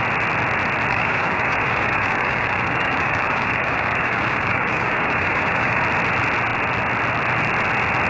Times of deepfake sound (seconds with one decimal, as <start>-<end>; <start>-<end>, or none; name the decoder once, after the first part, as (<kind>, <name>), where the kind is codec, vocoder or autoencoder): 0.9-5.8 (codec, DAC)